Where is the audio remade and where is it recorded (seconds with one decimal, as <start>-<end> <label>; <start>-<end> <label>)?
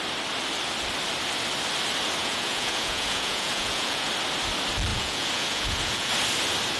0.0-2.2 recorded; 2.2-4.1 remade; 4.1-4.9 recorded; 4.9-6.1 remade; 6.1-6.8 recorded